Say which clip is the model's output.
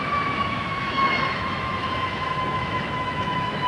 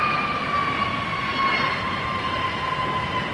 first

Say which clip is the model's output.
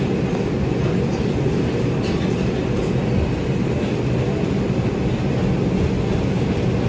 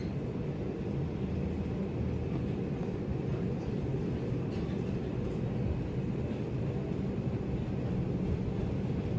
second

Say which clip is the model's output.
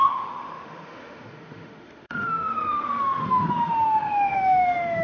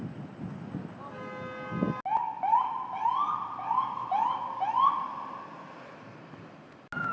first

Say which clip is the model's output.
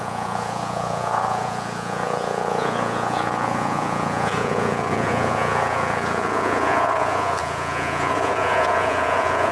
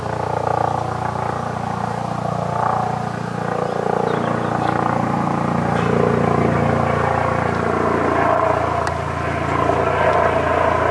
first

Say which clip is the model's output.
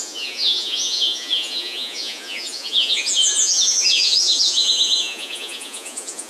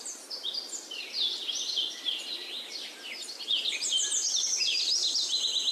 first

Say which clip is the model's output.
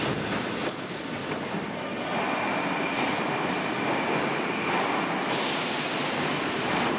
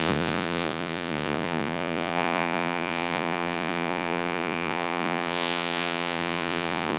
second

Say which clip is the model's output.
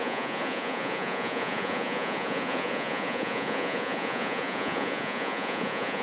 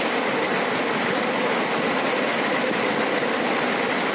first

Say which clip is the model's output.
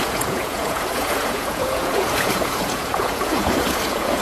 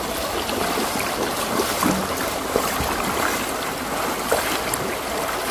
first